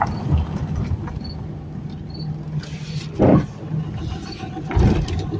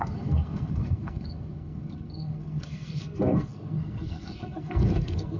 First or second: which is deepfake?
second